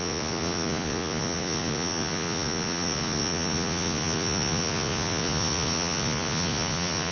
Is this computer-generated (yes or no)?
yes